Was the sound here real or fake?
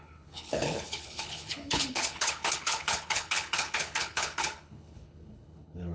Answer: fake